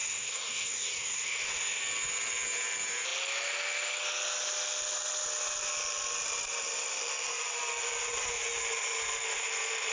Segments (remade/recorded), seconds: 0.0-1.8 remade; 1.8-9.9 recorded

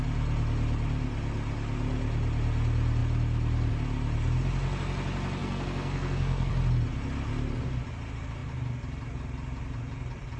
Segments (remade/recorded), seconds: 0.0-5.4 recorded; 5.4-6.5 remade; 6.5-10.4 recorded

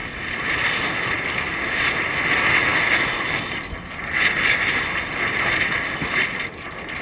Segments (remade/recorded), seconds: 0.0-7.0 recorded

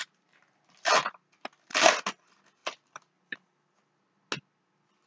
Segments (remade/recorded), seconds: 0.0-0.9 remade; 0.9-2.6 recorded; 2.6-3.5 remade; 3.5-5.1 recorded

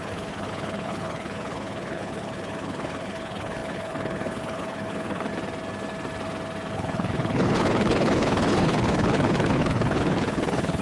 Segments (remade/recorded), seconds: 0.0-5.3 remade; 5.3-6.7 recorded; 6.7-10.8 remade

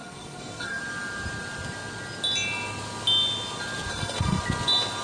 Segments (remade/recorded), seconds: 0.0-0.8 remade; 0.8-3.9 recorded; 3.9-4.4 remade; 4.4-5.0 recorded

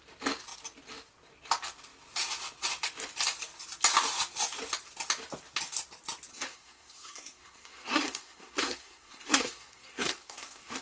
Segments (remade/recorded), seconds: 0.0-6.3 recorded; 6.3-10.8 remade